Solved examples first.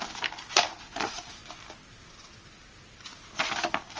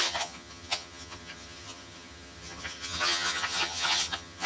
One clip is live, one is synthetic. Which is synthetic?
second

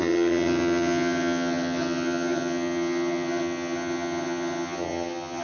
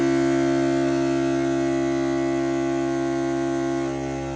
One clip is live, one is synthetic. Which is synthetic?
first